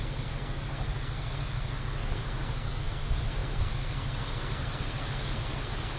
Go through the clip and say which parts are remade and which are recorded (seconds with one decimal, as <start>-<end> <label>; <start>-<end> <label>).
0.0-6.0 remade